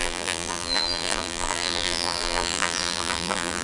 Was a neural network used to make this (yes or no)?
yes